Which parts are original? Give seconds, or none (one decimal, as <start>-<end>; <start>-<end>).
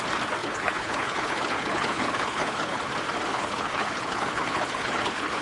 0.0-0.4; 2.8-3.3